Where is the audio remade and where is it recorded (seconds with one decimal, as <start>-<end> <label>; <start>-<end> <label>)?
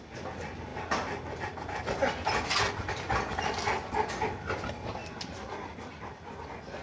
0.0-6.8 recorded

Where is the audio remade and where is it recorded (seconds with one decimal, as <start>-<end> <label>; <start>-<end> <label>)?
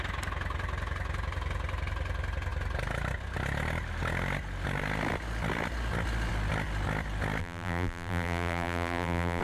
0.0-7.4 recorded; 7.4-9.4 remade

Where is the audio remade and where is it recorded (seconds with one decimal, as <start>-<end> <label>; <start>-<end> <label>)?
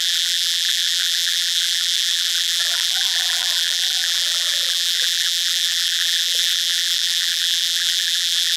0.0-8.6 remade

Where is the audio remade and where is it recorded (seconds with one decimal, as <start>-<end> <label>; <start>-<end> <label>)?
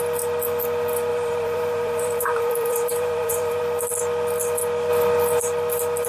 0.0-1.1 recorded; 1.1-3.6 remade; 3.6-6.1 recorded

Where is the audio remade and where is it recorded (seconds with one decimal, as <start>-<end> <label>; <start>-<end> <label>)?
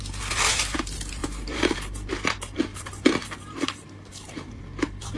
0.0-1.2 recorded; 1.2-2.1 remade; 2.1-2.7 recorded; 2.7-4.6 remade; 4.6-5.2 recorded